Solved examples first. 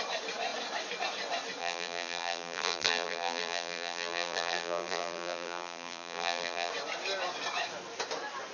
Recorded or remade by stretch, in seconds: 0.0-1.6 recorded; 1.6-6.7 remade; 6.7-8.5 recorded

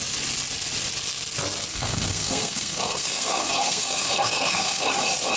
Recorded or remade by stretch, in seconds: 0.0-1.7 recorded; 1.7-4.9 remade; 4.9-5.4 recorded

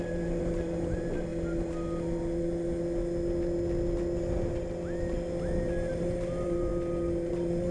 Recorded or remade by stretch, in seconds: 0.0-1.3 remade; 1.3-5.9 recorded; 5.9-6.7 remade; 6.7-7.3 recorded; 7.3-7.7 remade

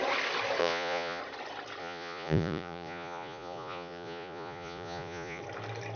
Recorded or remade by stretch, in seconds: 0.0-0.6 recorded; 0.6-1.2 remade; 1.2-1.8 recorded; 1.8-5.4 remade; 5.4-6.0 recorded

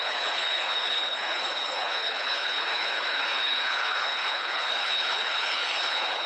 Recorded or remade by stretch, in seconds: 0.0-6.3 remade

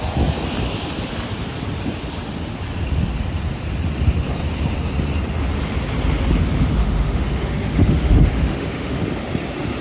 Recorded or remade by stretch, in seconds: 0.0-6.8 recorded; 6.8-9.0 remade; 9.0-9.8 recorded